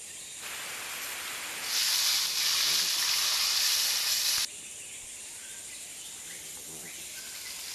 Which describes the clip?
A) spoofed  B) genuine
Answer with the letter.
B